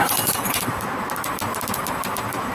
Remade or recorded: recorded